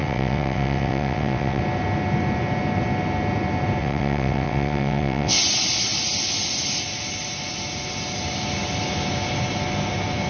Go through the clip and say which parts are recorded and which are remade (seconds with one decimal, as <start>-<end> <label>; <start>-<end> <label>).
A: 0.0-1.6 remade; 1.6-3.8 recorded; 3.8-5.4 remade; 5.4-10.3 recorded